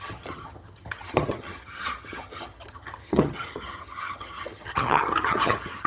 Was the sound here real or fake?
fake